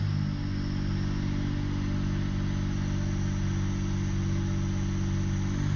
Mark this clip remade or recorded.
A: recorded